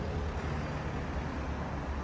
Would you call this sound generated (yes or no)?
no